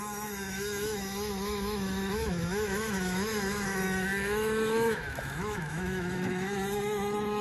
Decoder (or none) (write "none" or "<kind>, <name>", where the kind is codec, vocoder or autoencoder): autoencoder, DAC-VAE